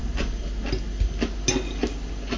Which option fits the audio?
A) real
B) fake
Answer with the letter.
A